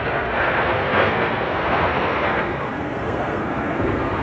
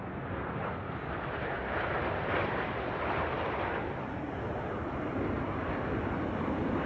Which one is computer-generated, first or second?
first